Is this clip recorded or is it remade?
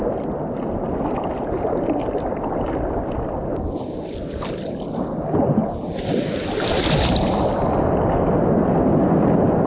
recorded